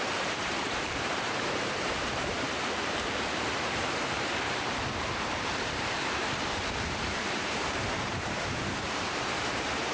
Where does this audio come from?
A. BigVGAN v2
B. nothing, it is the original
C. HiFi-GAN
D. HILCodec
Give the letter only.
A